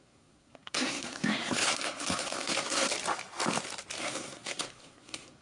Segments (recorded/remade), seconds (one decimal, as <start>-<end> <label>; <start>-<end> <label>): 0.0-2.9 remade; 2.9-4.0 recorded; 4.0-5.4 remade